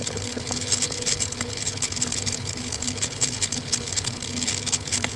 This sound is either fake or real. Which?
fake